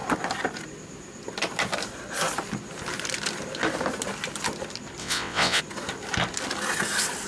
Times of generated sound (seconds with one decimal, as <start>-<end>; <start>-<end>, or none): 5.0-5.6